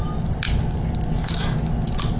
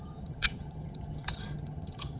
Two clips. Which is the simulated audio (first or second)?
second